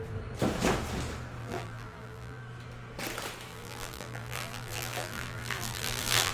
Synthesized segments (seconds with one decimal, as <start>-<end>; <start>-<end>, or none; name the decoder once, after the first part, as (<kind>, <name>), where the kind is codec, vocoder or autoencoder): 1.4-2.4 (vocoder, BigVGAN v2); 3.5-6.3